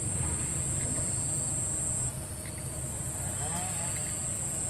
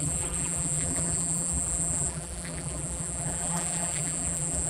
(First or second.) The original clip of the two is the first